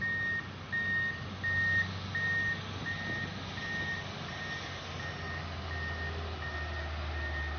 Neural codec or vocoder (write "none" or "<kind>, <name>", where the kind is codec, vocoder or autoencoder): none